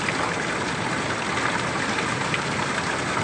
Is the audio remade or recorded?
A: recorded